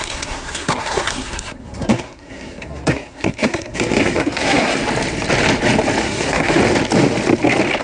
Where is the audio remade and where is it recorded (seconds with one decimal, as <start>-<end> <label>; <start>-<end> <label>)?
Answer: 0.0-4.8 remade; 4.8-6.0 recorded; 6.0-6.6 remade; 6.6-7.8 recorded